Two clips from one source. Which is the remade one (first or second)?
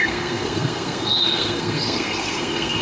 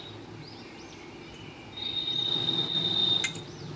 first